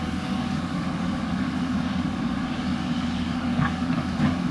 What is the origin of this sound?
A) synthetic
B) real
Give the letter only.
A